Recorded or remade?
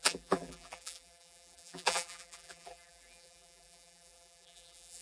remade